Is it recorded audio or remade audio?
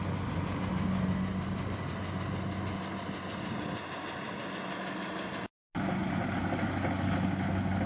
recorded